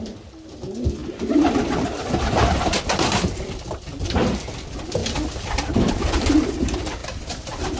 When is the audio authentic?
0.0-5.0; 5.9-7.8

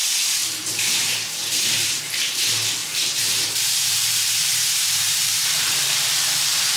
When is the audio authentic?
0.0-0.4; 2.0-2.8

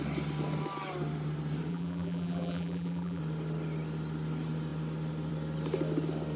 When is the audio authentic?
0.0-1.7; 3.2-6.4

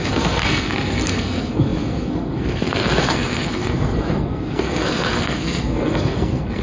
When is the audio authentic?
none